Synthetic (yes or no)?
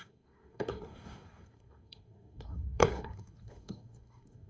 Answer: yes